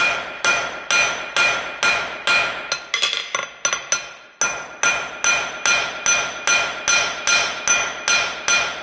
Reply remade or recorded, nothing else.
recorded